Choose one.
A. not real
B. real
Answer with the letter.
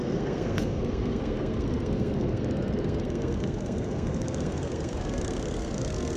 A